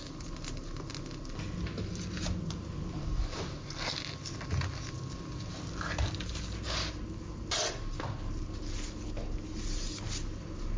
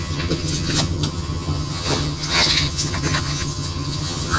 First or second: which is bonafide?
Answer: first